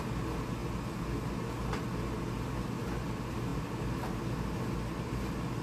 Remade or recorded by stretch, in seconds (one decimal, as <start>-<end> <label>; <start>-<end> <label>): 0.0-5.6 recorded